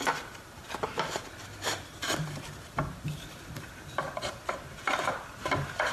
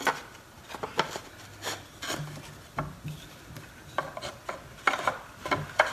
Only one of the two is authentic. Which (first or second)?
second